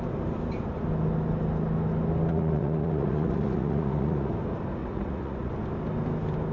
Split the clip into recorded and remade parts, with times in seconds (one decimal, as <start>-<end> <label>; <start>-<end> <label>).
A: 0.0-2.3 recorded; 2.3-4.3 remade; 4.3-4.8 recorded; 4.8-5.5 remade; 5.5-6.5 recorded